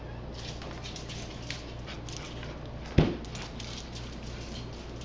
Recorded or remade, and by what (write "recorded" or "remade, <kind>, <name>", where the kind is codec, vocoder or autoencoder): recorded